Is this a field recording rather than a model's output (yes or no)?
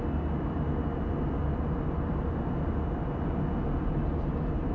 yes